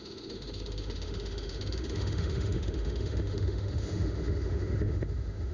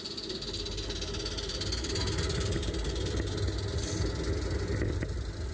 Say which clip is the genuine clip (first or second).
second